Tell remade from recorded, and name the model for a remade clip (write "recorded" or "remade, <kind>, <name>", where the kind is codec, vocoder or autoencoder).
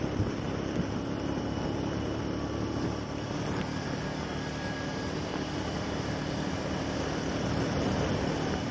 recorded